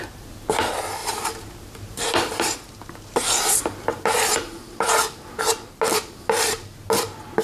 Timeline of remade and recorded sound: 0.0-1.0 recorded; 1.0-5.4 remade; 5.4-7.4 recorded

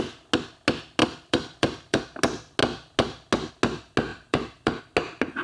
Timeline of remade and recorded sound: 0.0-1.0 recorded; 1.0-2.0 remade; 2.0-4.1 recorded; 4.1-4.8 remade; 4.8-5.4 recorded

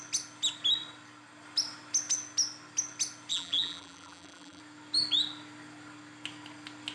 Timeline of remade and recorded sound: 0.0-3.3 recorded; 3.3-4.6 remade; 4.6-6.9 recorded

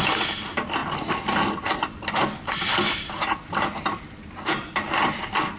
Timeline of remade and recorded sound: 0.0-0.8 remade; 0.8-4.2 recorded; 4.2-5.6 remade